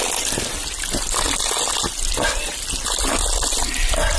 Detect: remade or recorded recorded